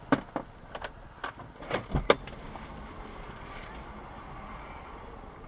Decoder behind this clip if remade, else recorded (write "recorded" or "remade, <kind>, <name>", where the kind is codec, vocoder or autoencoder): recorded